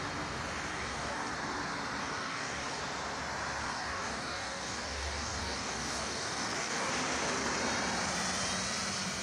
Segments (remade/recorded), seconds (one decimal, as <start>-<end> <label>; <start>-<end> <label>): 0.0-0.7 recorded; 0.7-1.3 remade; 1.3-2.0 recorded; 2.0-2.8 remade; 2.8-3.6 recorded; 3.6-6.9 remade; 6.9-9.2 recorded